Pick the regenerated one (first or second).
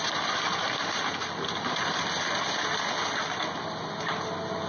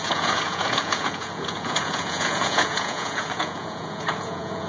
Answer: second